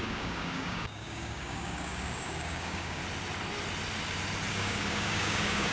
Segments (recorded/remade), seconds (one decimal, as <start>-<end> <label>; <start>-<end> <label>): 0.0-3.0 remade; 3.0-4.5 recorded; 4.5-5.7 remade